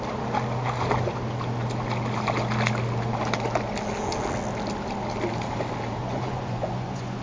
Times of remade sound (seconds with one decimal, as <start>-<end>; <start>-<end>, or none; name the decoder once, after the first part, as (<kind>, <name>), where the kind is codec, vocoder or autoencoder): 6.0-7.2 (vocoder, Vocos)